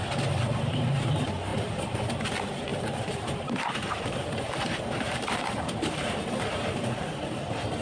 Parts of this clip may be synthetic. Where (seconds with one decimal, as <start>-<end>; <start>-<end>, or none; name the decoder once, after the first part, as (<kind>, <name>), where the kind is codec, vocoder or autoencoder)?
0.0-7.8 (vocoder, BigVGAN v2)